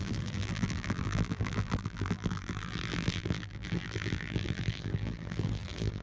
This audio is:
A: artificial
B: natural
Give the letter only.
A